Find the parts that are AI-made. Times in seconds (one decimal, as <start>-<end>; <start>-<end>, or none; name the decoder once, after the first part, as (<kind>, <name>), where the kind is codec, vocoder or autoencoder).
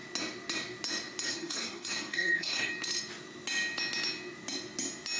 1.2-2.7 (codec, SNAC)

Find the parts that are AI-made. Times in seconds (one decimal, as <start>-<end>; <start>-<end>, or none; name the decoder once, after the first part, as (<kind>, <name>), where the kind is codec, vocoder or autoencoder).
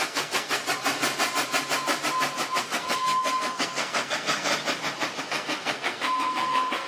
0.0-0.6 (codec, SNAC); 2.6-4.5; 5.2-6.9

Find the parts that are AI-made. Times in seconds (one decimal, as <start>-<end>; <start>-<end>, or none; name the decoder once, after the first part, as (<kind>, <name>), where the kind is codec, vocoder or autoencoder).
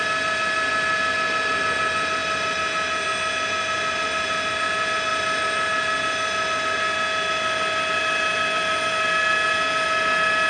none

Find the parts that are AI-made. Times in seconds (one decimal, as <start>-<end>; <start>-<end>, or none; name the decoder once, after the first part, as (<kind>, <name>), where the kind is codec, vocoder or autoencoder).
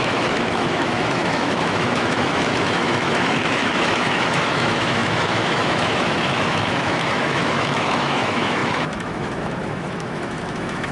0.0-10.9 (autoencoder, DAC-VAE)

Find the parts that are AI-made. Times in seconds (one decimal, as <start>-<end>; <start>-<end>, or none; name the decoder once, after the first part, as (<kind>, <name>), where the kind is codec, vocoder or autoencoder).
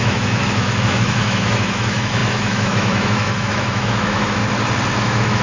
0.0-4.4 (autoencoder, DAC-VAE); 5.0-5.4